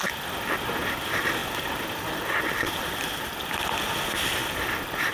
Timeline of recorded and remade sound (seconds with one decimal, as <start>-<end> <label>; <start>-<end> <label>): 0.0-5.1 recorded